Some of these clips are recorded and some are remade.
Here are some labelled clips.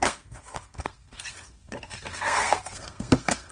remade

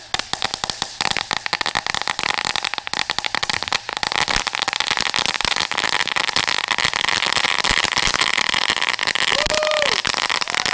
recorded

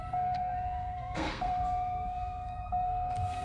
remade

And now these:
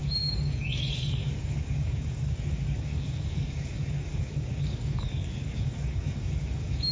remade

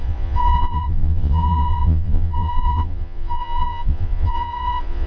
remade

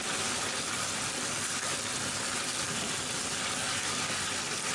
recorded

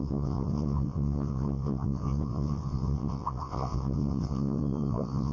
remade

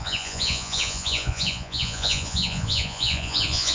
remade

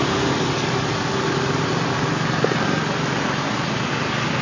recorded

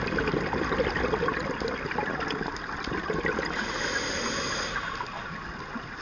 recorded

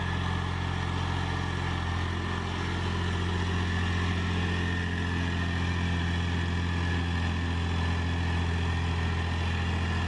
recorded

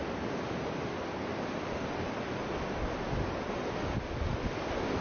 recorded